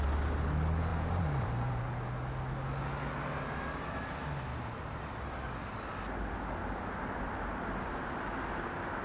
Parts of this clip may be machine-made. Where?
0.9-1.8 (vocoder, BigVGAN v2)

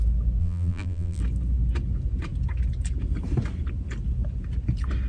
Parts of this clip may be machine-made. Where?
0.4-1.2 (vocoder, BigVGAN v2)